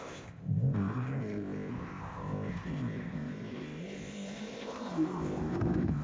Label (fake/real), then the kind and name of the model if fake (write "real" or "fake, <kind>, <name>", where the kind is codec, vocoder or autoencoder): fake, codec, ZipCodec